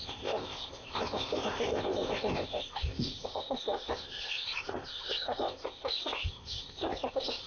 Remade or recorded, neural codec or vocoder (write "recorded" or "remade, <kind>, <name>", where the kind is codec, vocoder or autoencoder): remade, codec, ZipCodec